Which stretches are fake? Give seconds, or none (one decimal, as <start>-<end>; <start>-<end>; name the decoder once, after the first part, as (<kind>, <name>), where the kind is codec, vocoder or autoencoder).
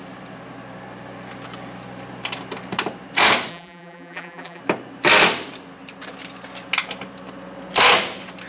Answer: 3.5-4.6 (vocoder, BigVGAN v2)